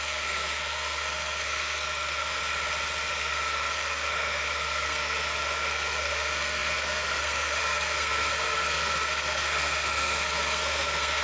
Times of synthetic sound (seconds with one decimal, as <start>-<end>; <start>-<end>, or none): 0.0-2.4; 3.1-11.2